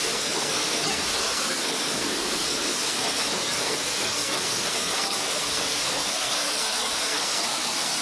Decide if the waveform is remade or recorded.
remade